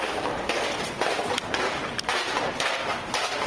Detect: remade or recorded recorded